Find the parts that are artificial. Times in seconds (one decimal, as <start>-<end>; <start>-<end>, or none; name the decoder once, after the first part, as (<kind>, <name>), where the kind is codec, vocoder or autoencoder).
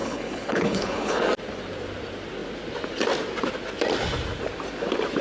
0.0-1.2 (codec, HILCodec)